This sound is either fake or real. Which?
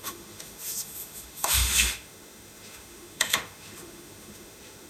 fake